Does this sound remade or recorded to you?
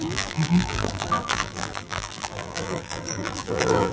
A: remade